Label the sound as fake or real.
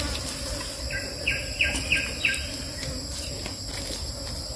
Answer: real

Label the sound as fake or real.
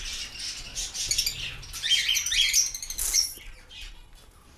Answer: real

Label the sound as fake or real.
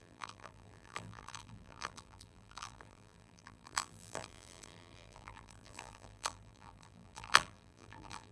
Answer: fake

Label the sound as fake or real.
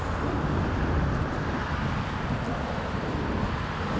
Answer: real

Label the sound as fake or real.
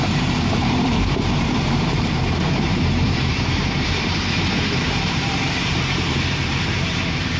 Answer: fake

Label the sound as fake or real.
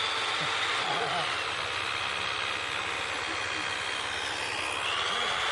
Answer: real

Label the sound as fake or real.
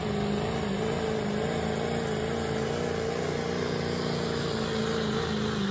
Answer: real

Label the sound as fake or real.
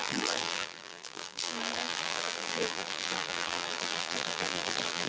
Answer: fake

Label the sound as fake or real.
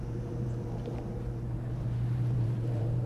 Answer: fake